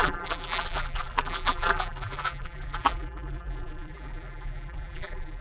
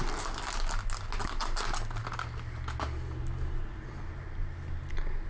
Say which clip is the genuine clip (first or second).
second